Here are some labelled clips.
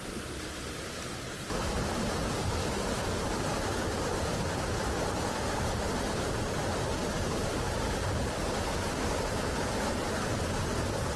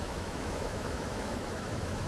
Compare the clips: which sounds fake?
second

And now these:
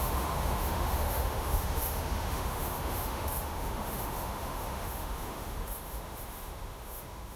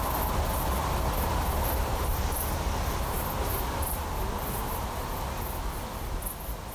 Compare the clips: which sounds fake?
first